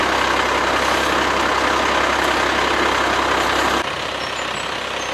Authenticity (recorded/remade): recorded